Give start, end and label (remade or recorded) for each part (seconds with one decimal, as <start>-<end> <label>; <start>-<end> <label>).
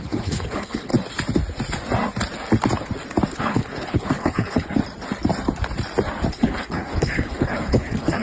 0.0-0.9 remade; 0.9-3.4 recorded; 3.4-4.8 remade; 4.8-6.3 recorded; 6.3-8.2 remade